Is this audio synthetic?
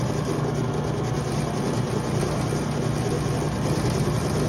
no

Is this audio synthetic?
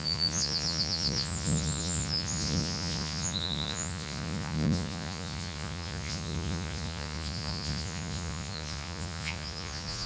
yes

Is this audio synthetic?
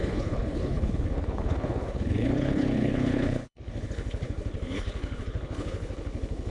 yes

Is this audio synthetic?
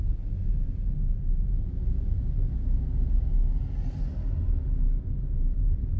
no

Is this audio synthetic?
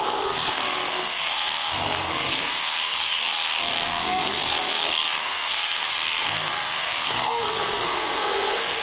yes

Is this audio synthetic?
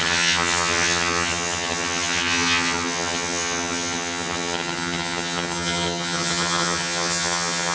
yes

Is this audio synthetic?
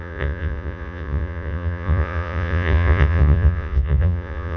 yes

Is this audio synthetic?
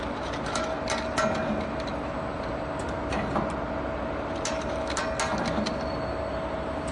no